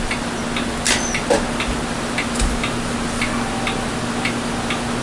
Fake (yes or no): no